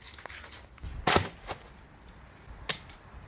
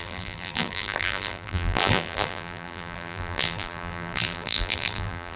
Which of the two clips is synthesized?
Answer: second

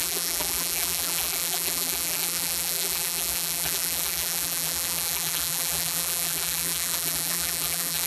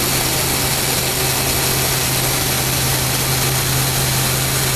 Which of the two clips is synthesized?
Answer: first